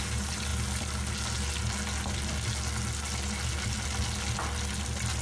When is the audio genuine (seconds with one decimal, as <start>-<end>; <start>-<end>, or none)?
0.0-5.2